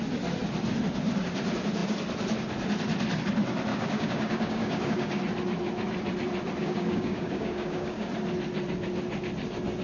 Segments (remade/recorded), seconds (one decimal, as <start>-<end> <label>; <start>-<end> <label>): 0.0-3.7 recorded; 3.7-5.2 remade; 5.2-6.6 recorded; 6.6-8.1 remade; 8.1-9.8 recorded